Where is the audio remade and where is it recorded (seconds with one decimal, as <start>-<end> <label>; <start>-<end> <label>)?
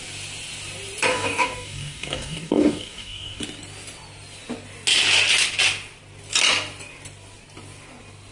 0.0-1.1 recorded; 1.1-3.4 remade; 3.4-8.3 recorded